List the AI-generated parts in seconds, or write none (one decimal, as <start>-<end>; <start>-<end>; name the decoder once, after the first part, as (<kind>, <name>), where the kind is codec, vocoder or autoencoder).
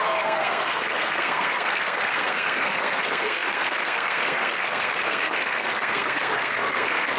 0.0-7.2 (codec, SNAC)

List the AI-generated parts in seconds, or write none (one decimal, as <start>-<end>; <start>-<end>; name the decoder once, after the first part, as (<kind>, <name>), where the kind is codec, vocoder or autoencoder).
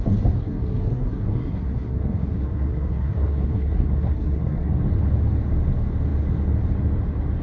0.4-4.8 (codec, SNAC)